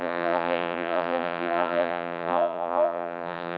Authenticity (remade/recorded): remade